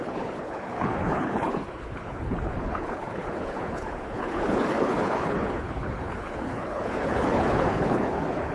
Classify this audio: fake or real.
fake